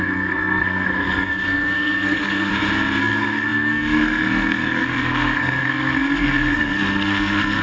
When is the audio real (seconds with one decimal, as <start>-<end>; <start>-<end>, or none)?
2.5-3.0